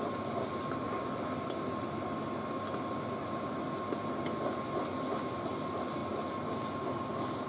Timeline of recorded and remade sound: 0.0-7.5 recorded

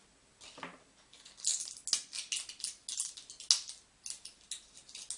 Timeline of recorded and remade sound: 0.0-5.2 recorded

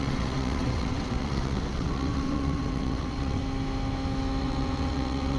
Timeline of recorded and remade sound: 0.0-3.4 remade; 3.4-4.4 recorded; 4.4-5.4 remade

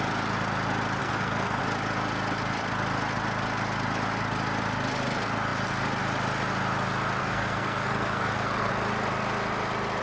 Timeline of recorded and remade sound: 0.0-1.0 recorded; 1.0-1.6 remade; 1.6-7.2 recorded; 7.2-8.7 remade; 8.7-10.0 recorded

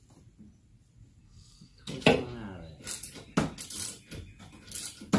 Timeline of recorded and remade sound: 0.0-1.2 recorded; 1.2-1.9 remade; 1.9-5.2 recorded

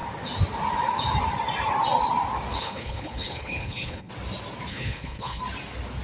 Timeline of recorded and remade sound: 0.0-2.6 recorded; 2.6-4.1 remade; 4.1-4.7 recorded; 4.7-5.4 remade; 5.4-6.0 recorded

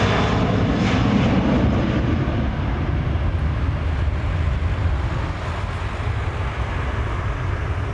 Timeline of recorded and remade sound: 0.0-7.9 recorded